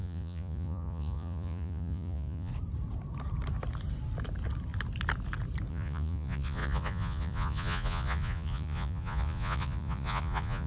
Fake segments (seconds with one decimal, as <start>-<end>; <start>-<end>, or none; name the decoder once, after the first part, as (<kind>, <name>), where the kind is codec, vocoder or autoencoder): 0.0-2.5 (vocoder, Vocos); 5.7-10.7